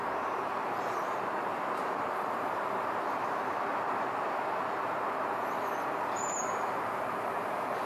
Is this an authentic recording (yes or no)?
no